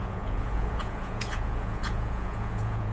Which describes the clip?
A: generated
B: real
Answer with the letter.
A